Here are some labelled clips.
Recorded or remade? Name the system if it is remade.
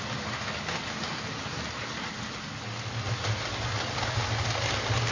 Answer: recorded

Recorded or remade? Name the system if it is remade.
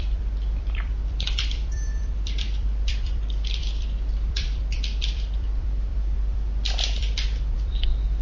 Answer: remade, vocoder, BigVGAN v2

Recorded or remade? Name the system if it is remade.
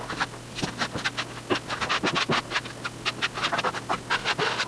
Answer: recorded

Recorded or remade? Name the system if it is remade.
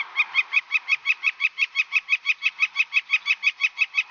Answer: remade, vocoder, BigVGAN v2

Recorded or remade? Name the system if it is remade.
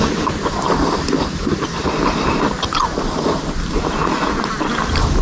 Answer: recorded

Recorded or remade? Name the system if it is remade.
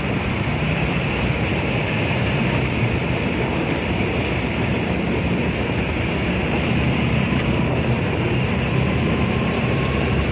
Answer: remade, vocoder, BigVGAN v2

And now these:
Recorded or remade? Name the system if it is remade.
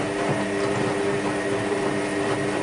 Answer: recorded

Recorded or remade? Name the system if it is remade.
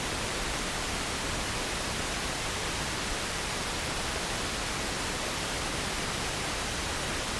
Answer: remade, vocoder, BigVGAN v2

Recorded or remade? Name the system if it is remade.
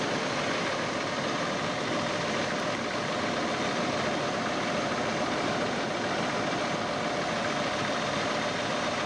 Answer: remade, vocoder, BigVGAN v2